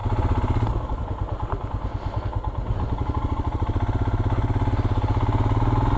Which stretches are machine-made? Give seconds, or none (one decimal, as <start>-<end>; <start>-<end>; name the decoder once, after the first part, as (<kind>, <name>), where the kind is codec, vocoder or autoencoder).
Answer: none